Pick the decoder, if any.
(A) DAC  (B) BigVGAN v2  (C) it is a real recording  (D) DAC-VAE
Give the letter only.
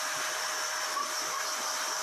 C